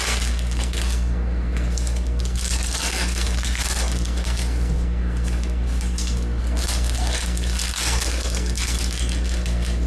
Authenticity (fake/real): fake